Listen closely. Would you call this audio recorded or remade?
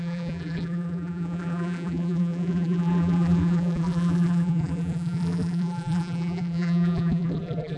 remade